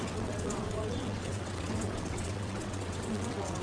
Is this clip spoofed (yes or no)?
yes